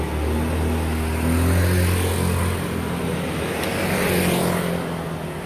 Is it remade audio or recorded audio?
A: recorded